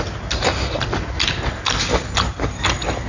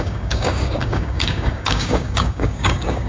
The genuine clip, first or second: first